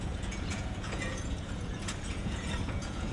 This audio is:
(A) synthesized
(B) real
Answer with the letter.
A